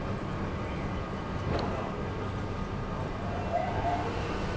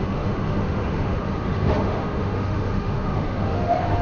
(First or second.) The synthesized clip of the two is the second